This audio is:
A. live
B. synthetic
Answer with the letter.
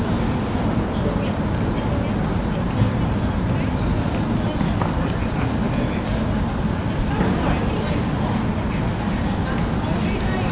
A